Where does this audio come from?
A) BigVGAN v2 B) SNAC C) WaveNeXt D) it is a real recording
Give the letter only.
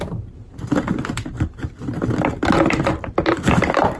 D